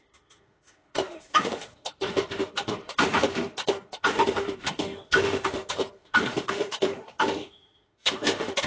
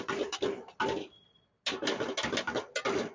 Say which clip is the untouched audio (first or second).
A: second